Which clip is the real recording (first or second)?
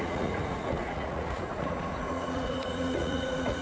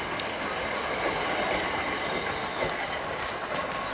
second